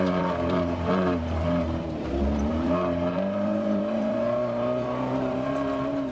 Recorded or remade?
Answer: remade